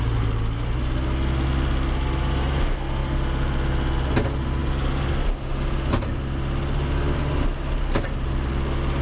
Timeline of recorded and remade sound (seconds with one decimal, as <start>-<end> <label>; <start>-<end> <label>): 0.0-9.0 recorded